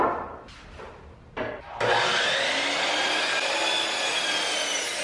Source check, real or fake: real